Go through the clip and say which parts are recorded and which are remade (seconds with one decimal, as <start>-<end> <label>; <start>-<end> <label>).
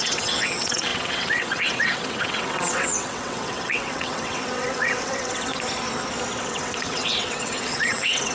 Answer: 0.0-5.5 remade; 5.5-6.4 recorded; 6.4-8.3 remade